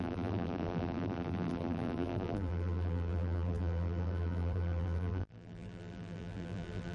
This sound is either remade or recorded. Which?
remade